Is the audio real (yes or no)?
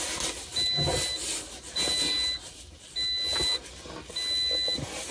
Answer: yes